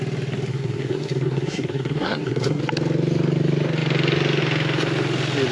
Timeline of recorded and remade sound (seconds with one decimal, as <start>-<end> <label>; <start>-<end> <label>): 0.0-0.5 recorded; 0.5-2.6 remade; 2.6-5.5 recorded